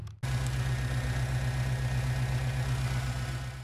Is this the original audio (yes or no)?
yes